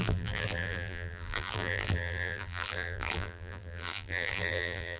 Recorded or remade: remade